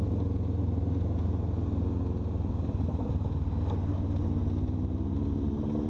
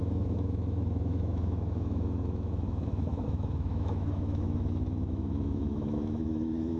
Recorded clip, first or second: first